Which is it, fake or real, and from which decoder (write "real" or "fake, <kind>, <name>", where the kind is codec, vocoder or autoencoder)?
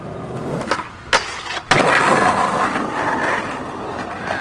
real